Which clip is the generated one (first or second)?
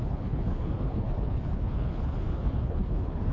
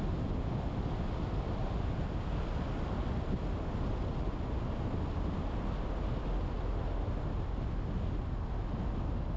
first